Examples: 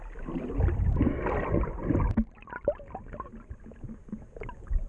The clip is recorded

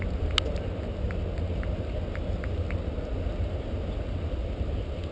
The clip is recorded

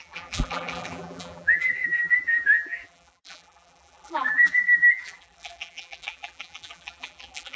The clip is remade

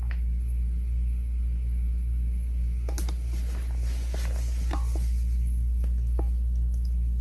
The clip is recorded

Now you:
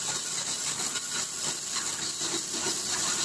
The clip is recorded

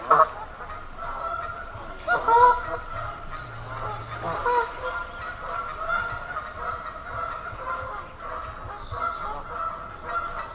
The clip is recorded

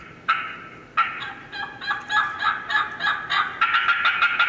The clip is recorded